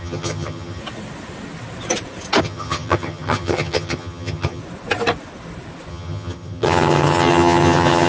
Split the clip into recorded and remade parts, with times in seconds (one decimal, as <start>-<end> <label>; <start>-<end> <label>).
0.0-0.8 remade; 0.8-2.4 recorded; 2.4-4.6 remade; 4.6-5.9 recorded; 5.9-8.1 remade